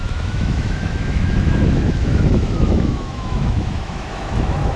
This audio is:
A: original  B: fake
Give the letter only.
B